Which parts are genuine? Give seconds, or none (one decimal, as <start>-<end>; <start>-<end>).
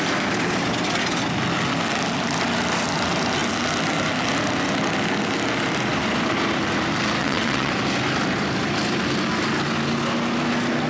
0.0-7.2; 7.7-10.9